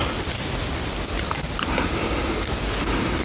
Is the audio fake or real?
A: real